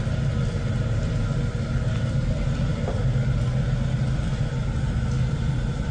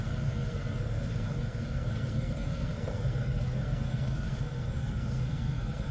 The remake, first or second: second